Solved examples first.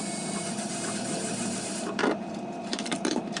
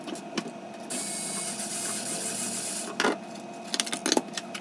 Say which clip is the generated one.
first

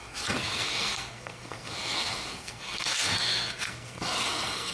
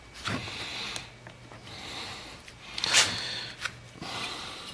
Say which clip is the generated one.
first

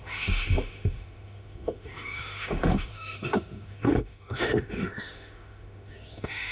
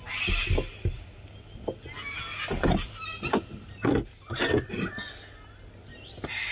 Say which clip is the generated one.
first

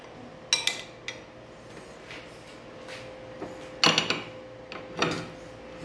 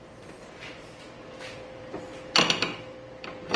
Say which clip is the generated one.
second